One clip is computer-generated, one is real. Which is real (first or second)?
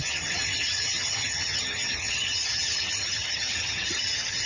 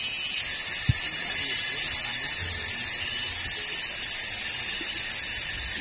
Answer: second